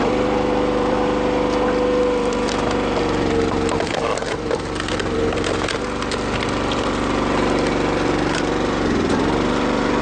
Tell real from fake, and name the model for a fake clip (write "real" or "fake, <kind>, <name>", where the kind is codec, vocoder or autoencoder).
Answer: fake, vocoder, BigVGAN v2